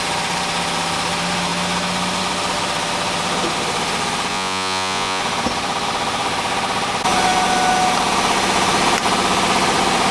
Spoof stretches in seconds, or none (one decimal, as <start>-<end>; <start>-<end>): 4.3-5.2